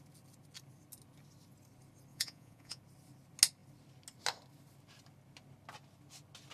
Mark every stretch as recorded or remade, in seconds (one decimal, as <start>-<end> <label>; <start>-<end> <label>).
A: 0.0-2.1 recorded; 2.1-2.8 remade; 2.8-6.5 recorded